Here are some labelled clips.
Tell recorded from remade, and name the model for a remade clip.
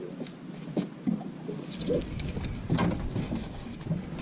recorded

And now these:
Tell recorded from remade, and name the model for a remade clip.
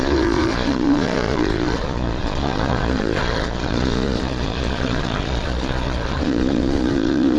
remade, vocoder, Vocos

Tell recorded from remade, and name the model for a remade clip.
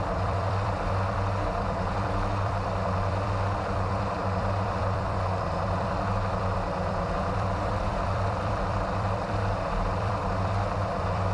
remade, vocoder, BigVGAN v2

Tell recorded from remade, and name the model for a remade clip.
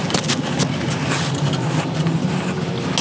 recorded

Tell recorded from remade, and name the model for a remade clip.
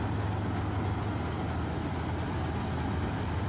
recorded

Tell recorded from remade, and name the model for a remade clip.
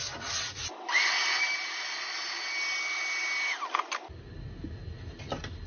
recorded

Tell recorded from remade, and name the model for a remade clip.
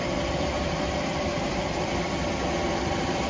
remade, vocoder, BigVGAN v2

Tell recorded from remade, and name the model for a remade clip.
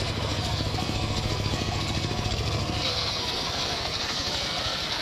remade, codec, SNAC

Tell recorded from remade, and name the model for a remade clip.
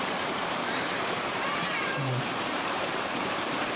remade, vocoder, BigVGAN v2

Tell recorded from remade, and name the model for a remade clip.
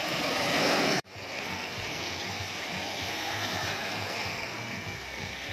remade, codec, SNAC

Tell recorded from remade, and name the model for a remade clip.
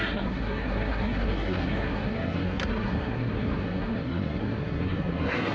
remade, codec, SNAC